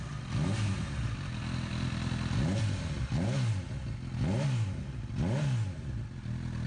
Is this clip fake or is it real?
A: real